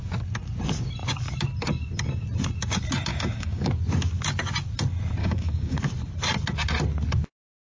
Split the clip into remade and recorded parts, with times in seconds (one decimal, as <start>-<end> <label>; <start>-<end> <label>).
0.0-3.1 recorded; 3.1-3.7 remade; 3.7-5.2 recorded; 5.2-5.8 remade; 5.8-7.7 recorded